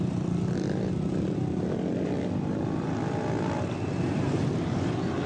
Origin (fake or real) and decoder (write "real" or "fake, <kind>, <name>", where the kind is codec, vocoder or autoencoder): real